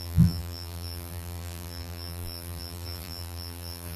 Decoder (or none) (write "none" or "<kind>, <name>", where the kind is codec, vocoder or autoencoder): vocoder, BigVGAN v2